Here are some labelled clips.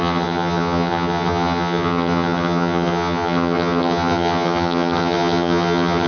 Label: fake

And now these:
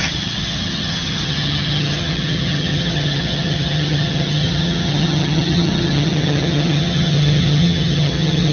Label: fake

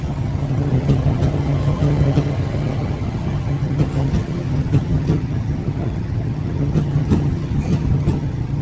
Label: fake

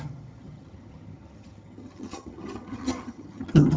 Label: fake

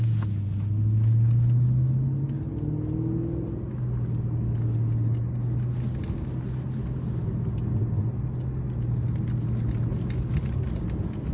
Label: real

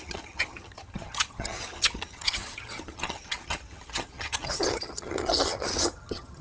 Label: fake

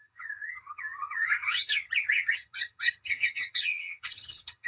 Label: fake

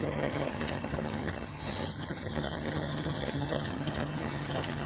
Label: fake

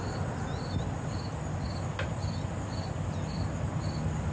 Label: real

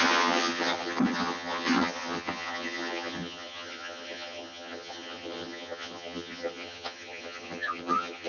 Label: fake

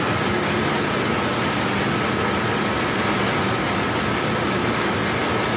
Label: real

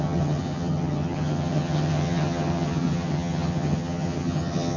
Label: fake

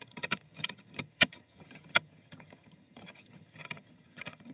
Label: fake